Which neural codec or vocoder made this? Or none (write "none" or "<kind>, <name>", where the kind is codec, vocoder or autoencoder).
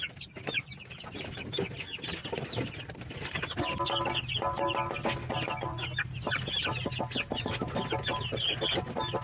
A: none